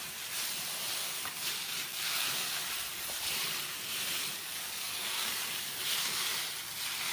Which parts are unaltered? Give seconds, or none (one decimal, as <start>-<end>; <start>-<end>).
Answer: 0.0-1.0; 1.5-1.9; 2.6-4.4; 6.3-7.1